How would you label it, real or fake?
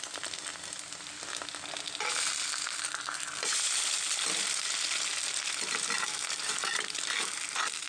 real